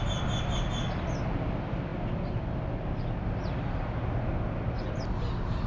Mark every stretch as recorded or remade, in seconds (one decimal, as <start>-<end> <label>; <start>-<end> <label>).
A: 0.0-5.7 recorded